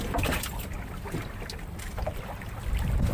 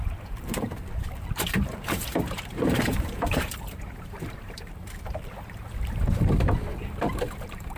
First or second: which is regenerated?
second